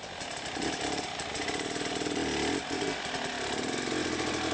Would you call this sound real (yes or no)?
yes